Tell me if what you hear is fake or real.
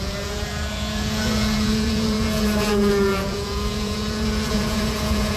fake